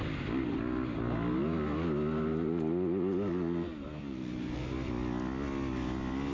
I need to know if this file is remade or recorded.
recorded